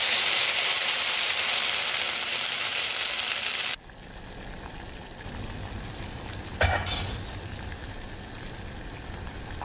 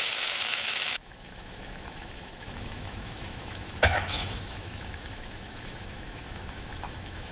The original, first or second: first